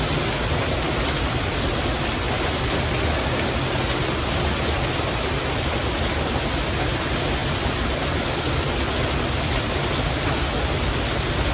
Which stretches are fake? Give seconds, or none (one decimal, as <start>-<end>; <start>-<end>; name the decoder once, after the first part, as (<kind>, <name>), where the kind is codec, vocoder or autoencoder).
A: none

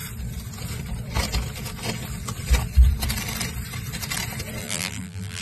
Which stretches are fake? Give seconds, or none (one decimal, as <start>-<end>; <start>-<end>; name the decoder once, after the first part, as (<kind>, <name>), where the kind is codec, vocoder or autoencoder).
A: 4.6-5.4 (vocoder, BigVGAN v2)

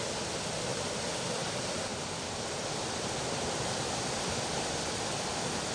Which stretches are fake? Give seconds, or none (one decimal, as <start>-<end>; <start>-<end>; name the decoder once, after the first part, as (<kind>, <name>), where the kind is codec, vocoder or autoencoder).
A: 0.7-1.2 (vocoder, BigVGAN v2); 1.9-5.3

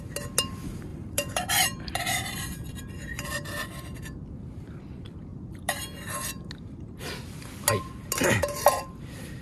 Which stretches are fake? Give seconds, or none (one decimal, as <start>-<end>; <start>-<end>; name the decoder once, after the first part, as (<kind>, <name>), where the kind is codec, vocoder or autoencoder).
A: 0.9-2.8 (vocoder, BigVGAN v2); 5.3-6.5

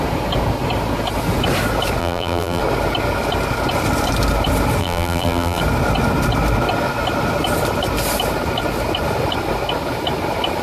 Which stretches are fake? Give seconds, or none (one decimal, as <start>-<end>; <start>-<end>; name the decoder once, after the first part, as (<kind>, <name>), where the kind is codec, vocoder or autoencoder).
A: 2.0-2.6 (vocoder, BigVGAN v2); 4.8-5.6

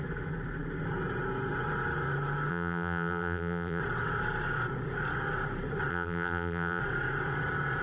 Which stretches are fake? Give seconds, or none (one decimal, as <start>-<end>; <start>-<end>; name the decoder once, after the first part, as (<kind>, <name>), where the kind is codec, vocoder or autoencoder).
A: 2.5-3.8 (vocoder, BigVGAN v2); 5.9-6.8

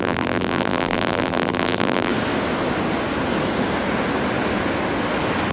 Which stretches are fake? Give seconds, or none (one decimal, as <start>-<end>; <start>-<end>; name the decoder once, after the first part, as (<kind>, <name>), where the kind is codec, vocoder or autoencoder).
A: 0.0-2.1 (vocoder, BigVGAN v2)

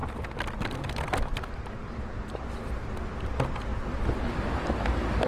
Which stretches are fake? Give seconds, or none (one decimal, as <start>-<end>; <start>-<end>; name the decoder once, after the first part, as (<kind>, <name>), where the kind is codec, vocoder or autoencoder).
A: none